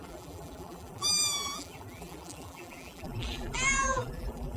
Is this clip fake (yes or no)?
yes